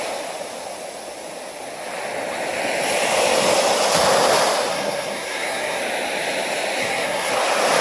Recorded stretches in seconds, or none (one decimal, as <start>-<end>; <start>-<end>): 0.0-4.7; 5.8-6.8; 7.3-7.8